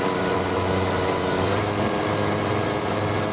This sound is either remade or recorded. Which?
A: recorded